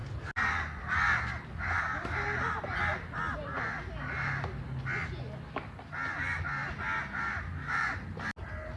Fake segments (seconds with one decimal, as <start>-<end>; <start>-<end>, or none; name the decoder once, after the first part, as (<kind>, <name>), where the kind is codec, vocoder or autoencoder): none